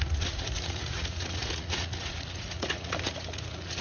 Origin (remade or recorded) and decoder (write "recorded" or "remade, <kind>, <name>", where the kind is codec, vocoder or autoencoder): remade, vocoder, Vocos